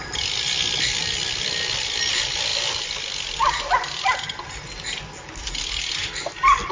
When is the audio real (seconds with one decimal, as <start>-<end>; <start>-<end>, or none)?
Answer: 0.0-6.7